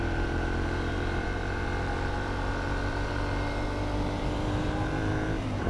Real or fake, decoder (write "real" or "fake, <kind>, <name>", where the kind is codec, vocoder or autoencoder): fake, vocoder, BigVGAN v2